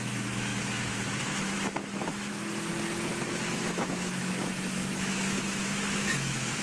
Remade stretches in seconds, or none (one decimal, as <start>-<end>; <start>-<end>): 0.0-2.7; 3.5-6.6